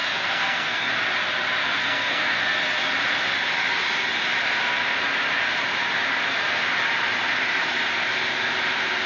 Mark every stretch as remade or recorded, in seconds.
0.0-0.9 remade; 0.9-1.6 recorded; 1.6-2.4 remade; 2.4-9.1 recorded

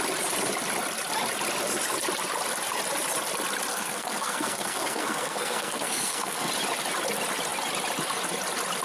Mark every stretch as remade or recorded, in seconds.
0.0-3.7 recorded; 3.7-6.5 remade; 6.5-8.8 recorded

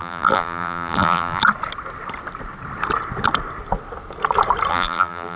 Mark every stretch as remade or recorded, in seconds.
0.0-1.4 remade; 1.4-4.7 recorded; 4.7-5.4 remade

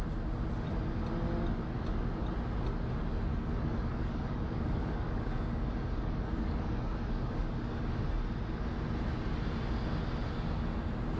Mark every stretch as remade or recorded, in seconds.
0.0-3.3 recorded; 3.3-7.8 remade; 7.8-11.2 recorded